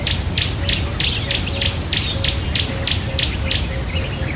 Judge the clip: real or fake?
real